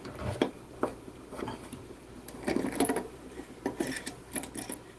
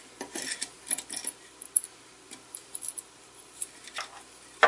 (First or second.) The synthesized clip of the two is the first